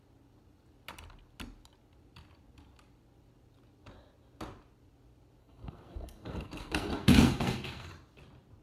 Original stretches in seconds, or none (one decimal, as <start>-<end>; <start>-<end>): 0.0-5.4; 7.9-8.6